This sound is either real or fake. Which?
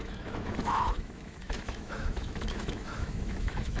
fake